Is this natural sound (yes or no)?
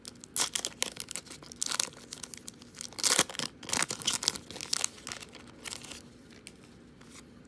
yes